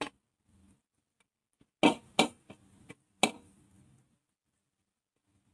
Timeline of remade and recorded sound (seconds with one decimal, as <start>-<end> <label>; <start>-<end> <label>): 0.0-5.5 recorded

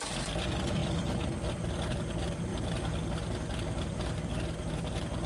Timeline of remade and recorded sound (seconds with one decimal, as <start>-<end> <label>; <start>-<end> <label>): 0.0-5.3 recorded

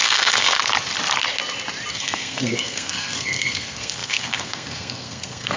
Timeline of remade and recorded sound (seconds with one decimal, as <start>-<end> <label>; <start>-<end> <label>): 0.0-0.6 remade; 0.6-1.9 recorded; 1.9-5.6 remade

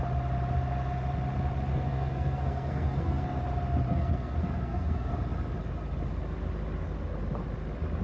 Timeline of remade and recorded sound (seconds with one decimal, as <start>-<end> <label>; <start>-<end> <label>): 0.0-1.7 recorded; 1.7-3.4 remade; 3.4-3.9 recorded; 3.9-5.1 remade; 5.1-8.0 recorded